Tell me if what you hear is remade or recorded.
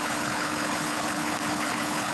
remade